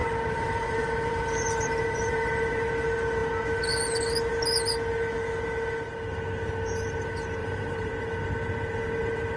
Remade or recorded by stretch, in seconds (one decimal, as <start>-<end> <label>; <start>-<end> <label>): 0.0-2.7 remade; 2.7-7.4 recorded; 7.4-7.9 remade; 7.9-9.4 recorded